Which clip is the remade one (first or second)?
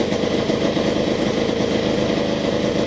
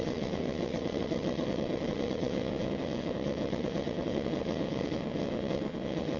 second